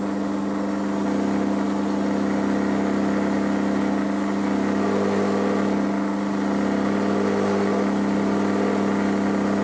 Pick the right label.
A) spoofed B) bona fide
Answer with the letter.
B